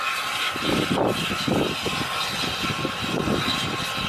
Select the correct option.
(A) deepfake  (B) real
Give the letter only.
B